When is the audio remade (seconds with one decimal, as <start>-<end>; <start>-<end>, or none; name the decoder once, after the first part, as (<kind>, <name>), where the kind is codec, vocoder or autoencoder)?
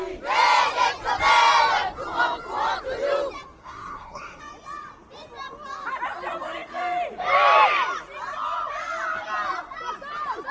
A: 3.6-4.4 (codec, SNAC)